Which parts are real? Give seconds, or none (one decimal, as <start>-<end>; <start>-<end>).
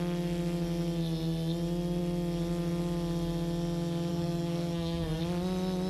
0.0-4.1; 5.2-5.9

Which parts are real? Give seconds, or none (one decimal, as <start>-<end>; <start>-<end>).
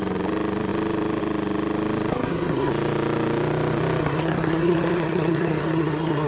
0.0-2.1; 2.7-4.0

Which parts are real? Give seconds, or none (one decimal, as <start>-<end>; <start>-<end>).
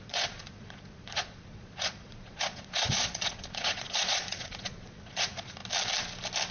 5.6-6.5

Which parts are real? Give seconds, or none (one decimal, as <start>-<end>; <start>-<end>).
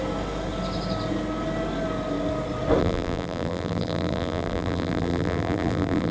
0.0-2.8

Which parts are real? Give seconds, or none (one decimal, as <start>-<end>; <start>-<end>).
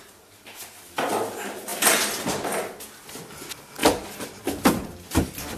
0.0-3.8; 4.4-5.6